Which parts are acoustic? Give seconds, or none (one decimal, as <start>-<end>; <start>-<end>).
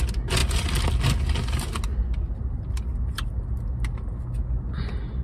0.0-5.2